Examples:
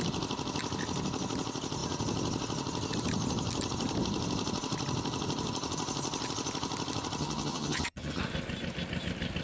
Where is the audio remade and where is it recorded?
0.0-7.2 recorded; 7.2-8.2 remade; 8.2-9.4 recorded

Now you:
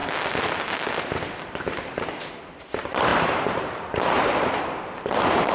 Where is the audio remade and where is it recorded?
0.0-2.6 recorded; 2.6-5.5 remade